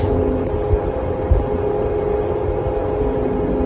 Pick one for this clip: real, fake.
real